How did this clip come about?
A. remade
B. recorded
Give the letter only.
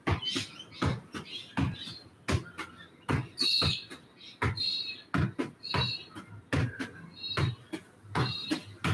B